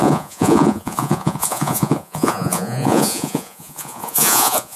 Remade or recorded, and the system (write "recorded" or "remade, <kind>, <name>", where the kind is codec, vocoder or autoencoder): remade, vocoder, Vocos